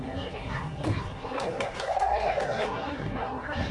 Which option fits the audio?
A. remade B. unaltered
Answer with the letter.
A